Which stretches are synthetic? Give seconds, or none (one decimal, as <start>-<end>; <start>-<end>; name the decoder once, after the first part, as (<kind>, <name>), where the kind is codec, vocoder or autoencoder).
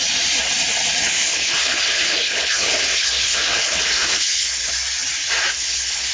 1.0-4.7 (codec, HILCodec); 5.5-6.1